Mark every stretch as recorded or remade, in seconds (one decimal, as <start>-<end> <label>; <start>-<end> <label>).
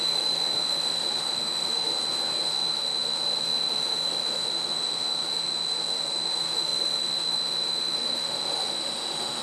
0.0-1.9 remade; 1.9-2.4 recorded; 2.4-9.4 remade